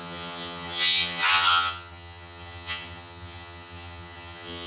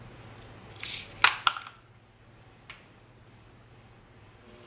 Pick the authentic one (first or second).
second